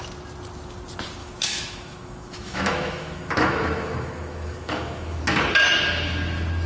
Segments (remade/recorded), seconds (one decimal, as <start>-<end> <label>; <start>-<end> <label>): 0.0-1.2 recorded; 1.2-5.2 remade; 5.2-6.7 recorded